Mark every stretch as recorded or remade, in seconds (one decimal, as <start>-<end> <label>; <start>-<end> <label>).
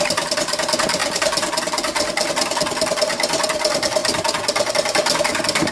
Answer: 0.0-5.7 recorded